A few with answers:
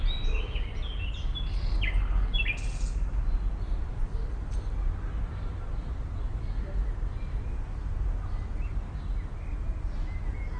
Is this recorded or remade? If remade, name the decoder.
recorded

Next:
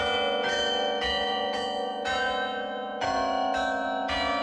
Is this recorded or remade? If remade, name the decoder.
remade, vocoder, Vocos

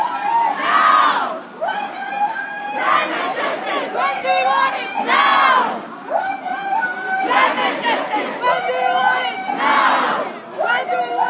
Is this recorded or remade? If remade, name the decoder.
recorded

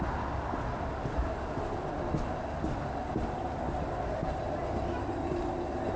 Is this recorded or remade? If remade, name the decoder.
recorded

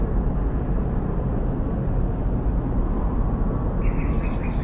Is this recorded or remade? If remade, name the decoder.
recorded